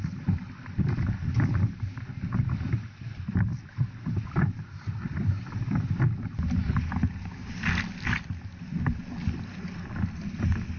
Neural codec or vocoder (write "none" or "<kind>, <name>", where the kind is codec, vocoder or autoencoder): none